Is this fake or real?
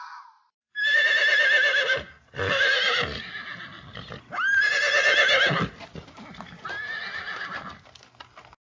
real